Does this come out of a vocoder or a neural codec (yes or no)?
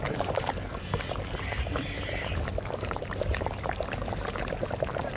yes